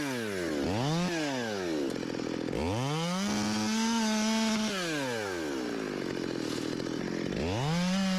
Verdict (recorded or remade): recorded